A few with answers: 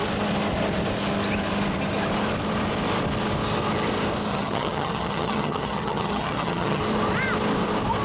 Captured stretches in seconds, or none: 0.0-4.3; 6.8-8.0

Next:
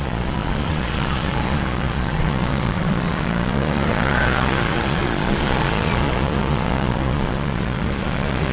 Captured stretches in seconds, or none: none

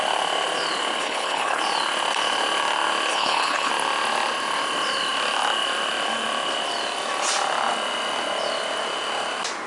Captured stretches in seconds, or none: 0.0-1.0; 1.6-3.1; 3.7-9.7

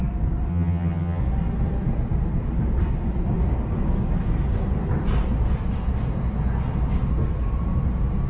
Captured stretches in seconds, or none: 0.0-0.5; 1.2-8.3

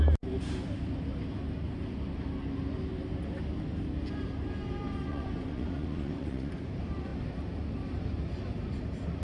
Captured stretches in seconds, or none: 0.0-5.1; 6.5-9.2

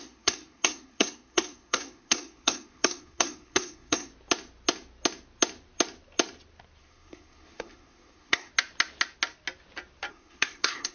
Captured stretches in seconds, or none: 4.1-6.8; 8.5-10.1